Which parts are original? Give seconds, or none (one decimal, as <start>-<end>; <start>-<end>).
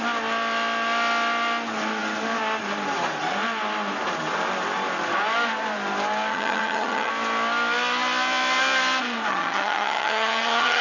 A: 0.0-6.3; 7.1-9.3